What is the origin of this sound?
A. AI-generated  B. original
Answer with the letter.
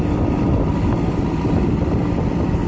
B